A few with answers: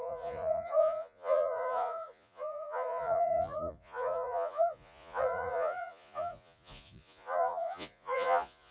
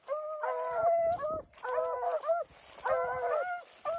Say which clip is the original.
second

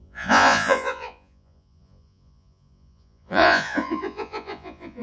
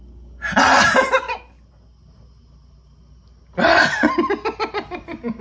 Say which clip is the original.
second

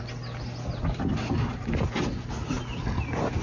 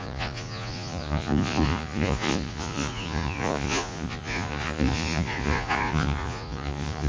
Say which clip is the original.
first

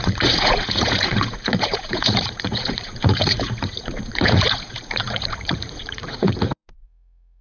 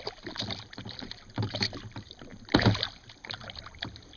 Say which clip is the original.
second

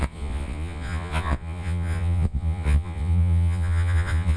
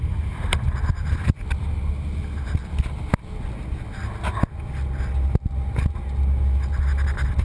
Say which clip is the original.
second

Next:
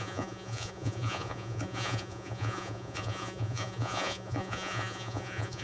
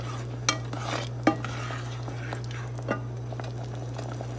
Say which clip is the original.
second